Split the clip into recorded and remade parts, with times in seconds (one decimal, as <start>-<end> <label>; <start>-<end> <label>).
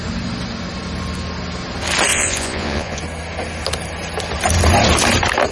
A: 0.0-2.1 recorded; 2.1-3.0 remade; 3.0-5.5 recorded